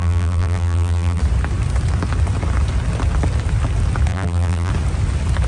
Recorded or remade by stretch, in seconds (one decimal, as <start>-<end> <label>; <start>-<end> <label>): 0.0-1.2 remade; 1.2-4.1 recorded; 4.1-4.7 remade; 4.7-5.5 recorded